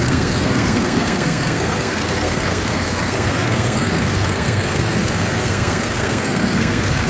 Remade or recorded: remade